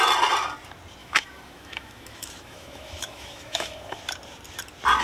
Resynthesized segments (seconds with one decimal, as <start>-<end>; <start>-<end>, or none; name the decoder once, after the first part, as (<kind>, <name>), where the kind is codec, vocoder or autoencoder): 1.0-4.0 (autoencoder, DAC-VAE)